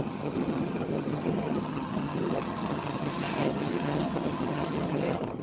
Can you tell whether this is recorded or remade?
remade